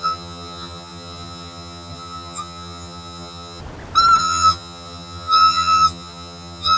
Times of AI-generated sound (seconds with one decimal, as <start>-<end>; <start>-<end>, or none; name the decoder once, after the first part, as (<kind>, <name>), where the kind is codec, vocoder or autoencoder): 0.0-3.6 (vocoder, HiFi-GAN); 4.2-6.8